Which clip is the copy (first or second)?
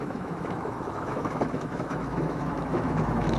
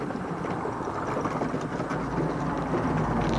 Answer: first